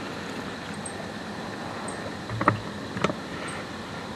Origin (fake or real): real